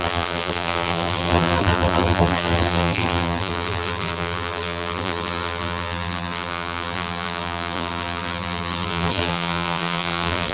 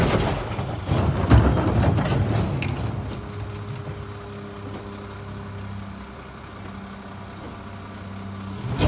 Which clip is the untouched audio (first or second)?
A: second